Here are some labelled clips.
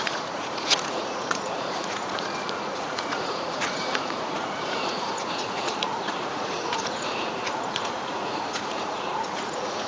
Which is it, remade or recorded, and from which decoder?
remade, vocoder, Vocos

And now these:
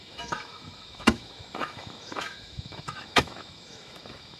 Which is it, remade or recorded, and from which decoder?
remade, autoencoder, DAC-VAE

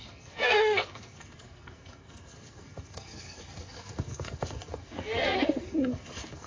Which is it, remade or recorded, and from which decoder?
remade, codec, SNAC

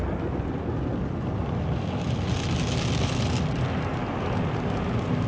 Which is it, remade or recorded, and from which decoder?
recorded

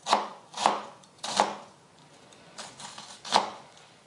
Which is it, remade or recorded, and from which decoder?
remade, vocoder, Vocos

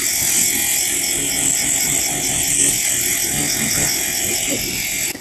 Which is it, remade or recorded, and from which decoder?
recorded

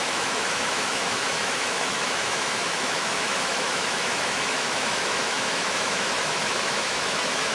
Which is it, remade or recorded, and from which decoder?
remade, autoencoder, DAC-VAE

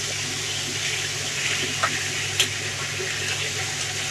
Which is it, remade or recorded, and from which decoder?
recorded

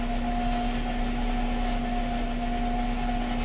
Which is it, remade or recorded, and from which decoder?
recorded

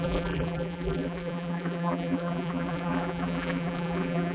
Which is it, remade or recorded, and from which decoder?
remade, vocoder, BigVGAN v2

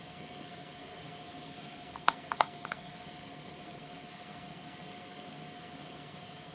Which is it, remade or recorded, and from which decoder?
remade, codec, SNAC